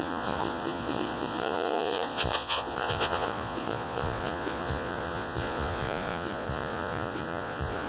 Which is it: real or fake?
fake